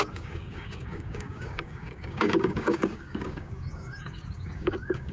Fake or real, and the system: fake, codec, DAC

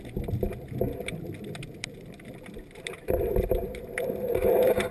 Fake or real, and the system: fake, vocoder, BigVGAN v2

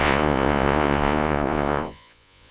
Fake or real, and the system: fake, vocoder, Vocos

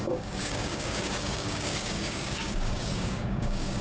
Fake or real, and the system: fake, codec, DAC